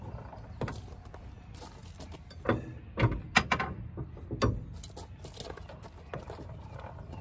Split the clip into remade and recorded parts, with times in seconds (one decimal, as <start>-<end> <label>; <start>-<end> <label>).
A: 0.0-7.2 recorded